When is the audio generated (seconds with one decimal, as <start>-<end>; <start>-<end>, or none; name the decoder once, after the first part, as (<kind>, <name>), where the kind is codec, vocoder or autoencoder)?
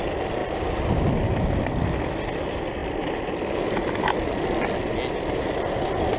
none